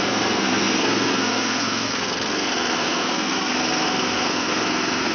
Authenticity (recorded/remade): remade